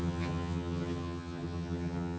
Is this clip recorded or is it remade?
remade